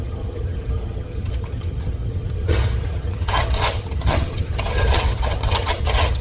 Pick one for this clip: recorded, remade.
remade